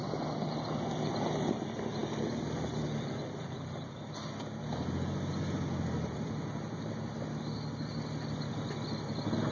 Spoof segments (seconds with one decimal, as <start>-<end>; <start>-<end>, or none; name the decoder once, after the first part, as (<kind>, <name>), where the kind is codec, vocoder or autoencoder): none